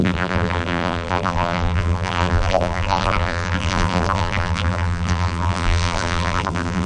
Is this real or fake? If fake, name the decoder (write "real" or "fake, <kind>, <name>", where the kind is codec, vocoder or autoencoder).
fake, vocoder, BigVGAN v2